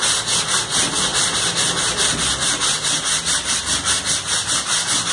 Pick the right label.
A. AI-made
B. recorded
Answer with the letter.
B